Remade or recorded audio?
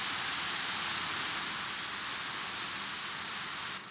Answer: recorded